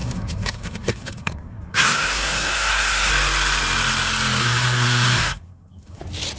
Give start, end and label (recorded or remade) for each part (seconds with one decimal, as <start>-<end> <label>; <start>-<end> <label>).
0.0-3.1 remade; 3.1-4.4 recorded; 4.4-6.0 remade; 6.0-6.4 recorded